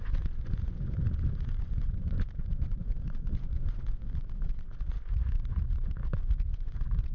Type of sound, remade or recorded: remade